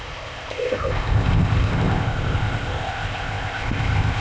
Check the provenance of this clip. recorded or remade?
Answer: remade